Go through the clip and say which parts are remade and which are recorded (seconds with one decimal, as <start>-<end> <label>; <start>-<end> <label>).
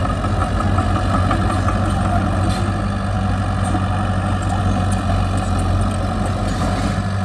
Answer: 0.0-7.2 recorded